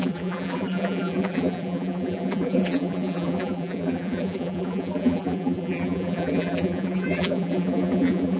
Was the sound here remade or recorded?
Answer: remade